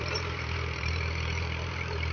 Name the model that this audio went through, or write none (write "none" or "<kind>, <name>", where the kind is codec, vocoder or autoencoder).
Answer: vocoder, BigVGAN v2